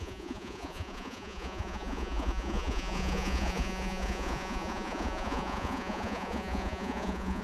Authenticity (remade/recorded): remade